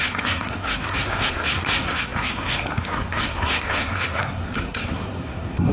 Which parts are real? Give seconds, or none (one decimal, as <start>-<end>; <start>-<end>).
none

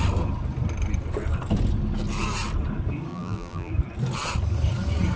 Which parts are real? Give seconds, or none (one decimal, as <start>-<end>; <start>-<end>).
0.0-3.1; 3.7-5.2

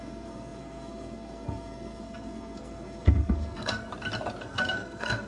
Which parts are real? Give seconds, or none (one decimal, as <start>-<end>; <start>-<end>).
3.9-4.4

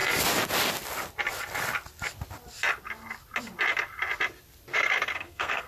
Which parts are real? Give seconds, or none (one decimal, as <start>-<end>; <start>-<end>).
0.0-4.7